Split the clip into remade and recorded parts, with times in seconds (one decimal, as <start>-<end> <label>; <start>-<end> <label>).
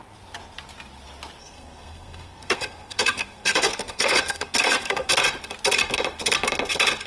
0.0-1.4 recorded; 1.4-5.1 remade; 5.1-7.1 recorded